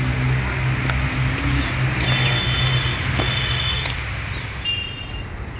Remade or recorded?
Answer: recorded